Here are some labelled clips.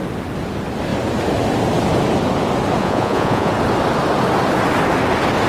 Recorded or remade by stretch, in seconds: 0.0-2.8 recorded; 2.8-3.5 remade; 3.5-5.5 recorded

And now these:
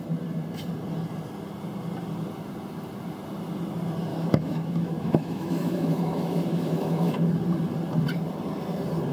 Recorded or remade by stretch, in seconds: 0.0-4.1 recorded; 4.1-7.1 remade; 7.1-9.1 recorded

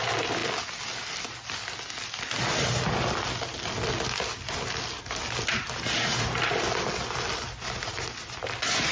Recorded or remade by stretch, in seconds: 0.0-8.9 recorded